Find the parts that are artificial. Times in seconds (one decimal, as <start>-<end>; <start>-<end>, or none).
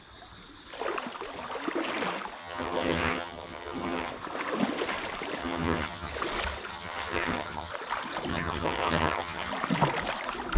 2.4-4.1; 5.4-6.1; 6.7-7.7; 8.3-9.5